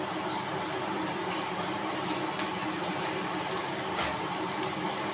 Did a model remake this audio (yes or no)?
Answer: no